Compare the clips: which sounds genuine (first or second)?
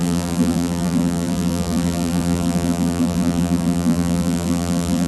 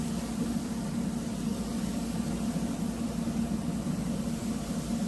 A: second